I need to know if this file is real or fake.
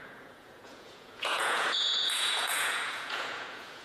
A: fake